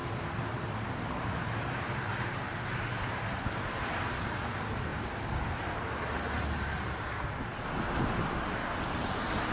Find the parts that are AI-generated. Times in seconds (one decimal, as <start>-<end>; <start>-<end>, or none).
none